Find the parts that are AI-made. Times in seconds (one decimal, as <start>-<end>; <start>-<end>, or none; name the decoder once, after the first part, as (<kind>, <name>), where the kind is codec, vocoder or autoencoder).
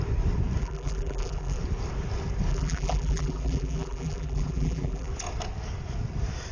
0.6-1.6 (vocoder, BigVGAN v2); 2.5-5.1